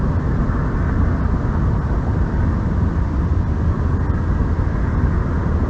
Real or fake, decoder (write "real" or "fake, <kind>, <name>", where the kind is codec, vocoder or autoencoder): real